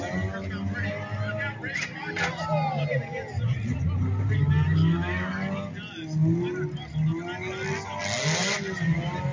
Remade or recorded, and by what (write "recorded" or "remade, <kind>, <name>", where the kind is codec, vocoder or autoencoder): recorded